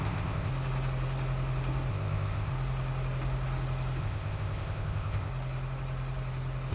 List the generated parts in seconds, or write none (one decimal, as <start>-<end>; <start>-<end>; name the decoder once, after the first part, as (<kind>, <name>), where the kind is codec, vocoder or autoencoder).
0.0-0.5 (codec, ZipCodec); 1.9-2.5; 4.0-5.3